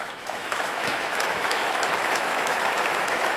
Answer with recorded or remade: remade